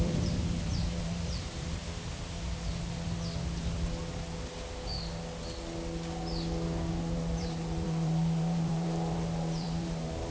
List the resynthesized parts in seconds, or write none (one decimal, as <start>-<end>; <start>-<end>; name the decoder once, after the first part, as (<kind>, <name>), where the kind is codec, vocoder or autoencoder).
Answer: 0.0-1.8 (vocoder, BigVGAN v2); 6.9-10.3